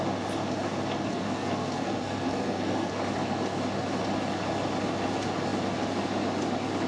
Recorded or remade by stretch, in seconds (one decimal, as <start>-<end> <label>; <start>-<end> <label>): 0.0-1.1 recorded; 1.1-2.9 remade; 2.9-6.9 recorded